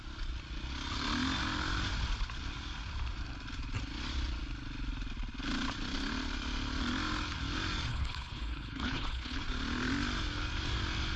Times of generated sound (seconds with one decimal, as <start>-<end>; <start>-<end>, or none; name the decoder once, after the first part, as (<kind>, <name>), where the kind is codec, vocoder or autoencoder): 7.9-9.4 (codec, HILCodec)